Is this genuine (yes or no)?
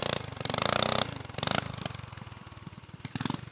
yes